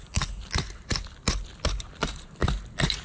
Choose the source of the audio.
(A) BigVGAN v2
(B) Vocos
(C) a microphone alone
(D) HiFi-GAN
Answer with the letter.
C